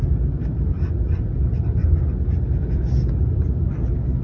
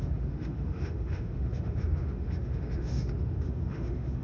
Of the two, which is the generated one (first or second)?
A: second